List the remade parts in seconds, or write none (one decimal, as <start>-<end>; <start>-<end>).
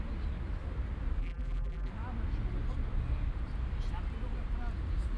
1.2-1.9